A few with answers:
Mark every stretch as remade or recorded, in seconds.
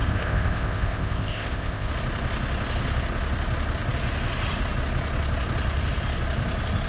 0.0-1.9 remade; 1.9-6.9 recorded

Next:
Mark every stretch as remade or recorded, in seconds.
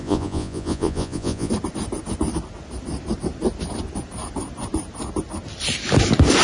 0.0-1.5 remade; 1.5-6.4 recorded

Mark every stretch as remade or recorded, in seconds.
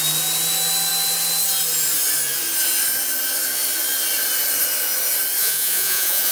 0.0-5.4 recorded; 5.4-6.3 remade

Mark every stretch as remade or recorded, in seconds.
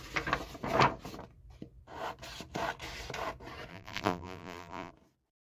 0.0-3.7 recorded; 3.7-4.9 remade; 4.9-5.5 recorded